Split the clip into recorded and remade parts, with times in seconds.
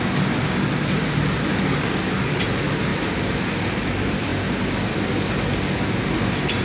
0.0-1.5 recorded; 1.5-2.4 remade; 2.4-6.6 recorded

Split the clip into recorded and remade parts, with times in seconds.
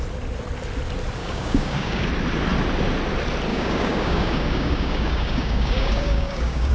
0.0-1.2 recorded; 1.2-2.1 remade; 2.1-3.5 recorded; 3.5-6.7 remade